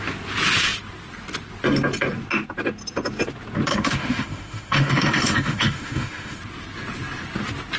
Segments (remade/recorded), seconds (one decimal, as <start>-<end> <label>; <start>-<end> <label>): 0.0-3.7 recorded; 3.7-6.4 remade; 6.4-7.8 recorded